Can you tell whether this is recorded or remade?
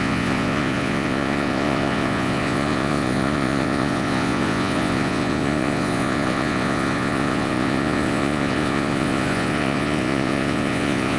remade